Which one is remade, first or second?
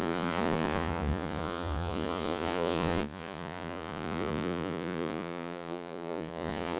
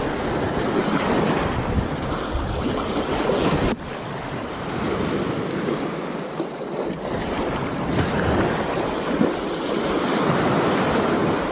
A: first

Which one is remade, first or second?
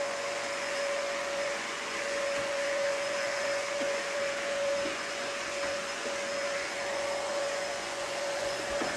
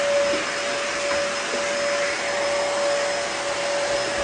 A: first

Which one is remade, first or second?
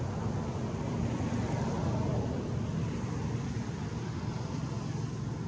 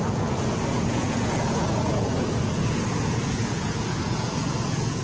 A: second